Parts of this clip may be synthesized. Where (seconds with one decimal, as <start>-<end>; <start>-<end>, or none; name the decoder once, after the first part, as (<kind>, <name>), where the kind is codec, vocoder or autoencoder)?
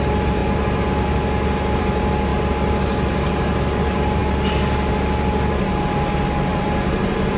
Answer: 6.5-7.0 (vocoder, BigVGAN v2)